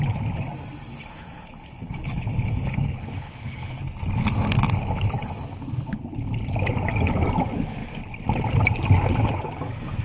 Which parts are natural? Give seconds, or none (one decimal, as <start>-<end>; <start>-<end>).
0.0-0.9; 3.8-10.0